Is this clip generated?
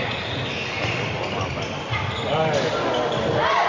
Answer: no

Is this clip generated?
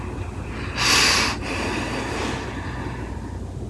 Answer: no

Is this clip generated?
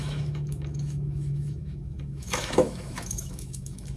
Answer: yes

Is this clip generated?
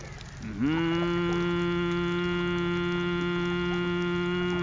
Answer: no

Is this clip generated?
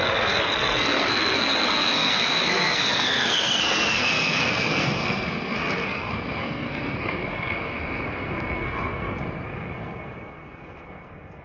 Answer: yes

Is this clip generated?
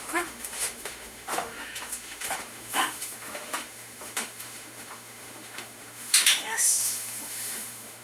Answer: yes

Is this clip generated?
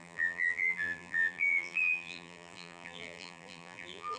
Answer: yes